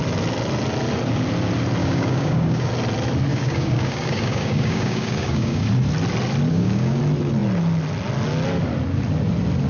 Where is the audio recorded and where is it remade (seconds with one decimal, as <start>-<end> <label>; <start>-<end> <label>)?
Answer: 0.0-1.8 recorded; 1.8-2.7 remade; 2.7-3.3 recorded; 3.3-5.7 remade; 5.7-6.5 recorded; 6.5-7.0 remade; 7.0-9.7 recorded

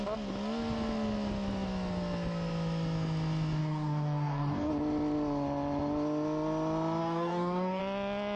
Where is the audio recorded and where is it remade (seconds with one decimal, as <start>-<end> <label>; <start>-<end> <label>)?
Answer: 0.0-3.6 recorded; 3.6-4.7 remade; 4.7-7.0 recorded; 7.0-7.8 remade; 7.8-8.4 recorded

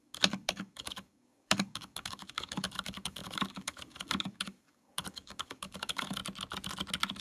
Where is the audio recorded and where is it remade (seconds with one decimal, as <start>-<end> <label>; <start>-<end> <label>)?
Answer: 0.0-6.2 remade; 6.2-7.2 recorded

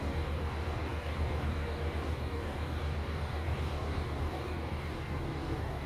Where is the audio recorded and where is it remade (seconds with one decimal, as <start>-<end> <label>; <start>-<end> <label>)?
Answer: 0.0-5.9 remade

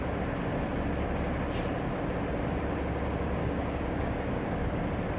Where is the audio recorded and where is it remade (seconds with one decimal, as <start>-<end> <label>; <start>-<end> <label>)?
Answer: 0.0-3.4 recorded; 3.4-4.7 remade; 4.7-5.2 recorded